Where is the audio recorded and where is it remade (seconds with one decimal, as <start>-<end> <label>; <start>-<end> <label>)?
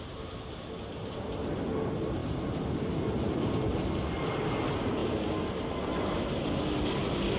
0.0-7.4 recorded